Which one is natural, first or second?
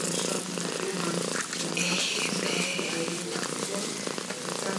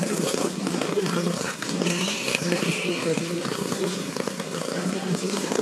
first